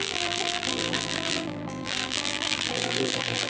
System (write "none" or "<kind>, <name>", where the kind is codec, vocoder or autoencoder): vocoder, BigVGAN v2